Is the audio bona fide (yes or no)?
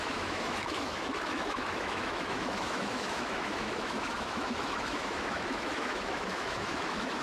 no